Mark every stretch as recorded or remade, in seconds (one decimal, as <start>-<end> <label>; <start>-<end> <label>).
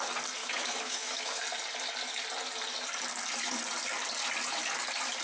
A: 0.0-0.4 recorded; 0.4-1.4 remade; 1.4-5.2 recorded